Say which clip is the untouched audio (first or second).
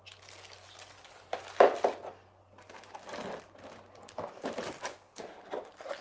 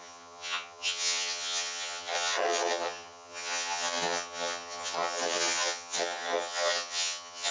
first